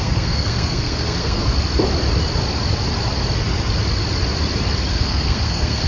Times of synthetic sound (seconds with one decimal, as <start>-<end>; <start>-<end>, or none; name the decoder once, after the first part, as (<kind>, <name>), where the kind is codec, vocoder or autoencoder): 0.0-1.4 (codec, SNAC); 4.9-5.9